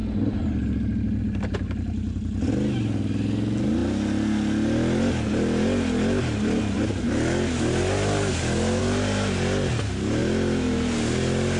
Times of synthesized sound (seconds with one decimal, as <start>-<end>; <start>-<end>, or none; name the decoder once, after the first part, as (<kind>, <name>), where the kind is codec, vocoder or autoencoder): none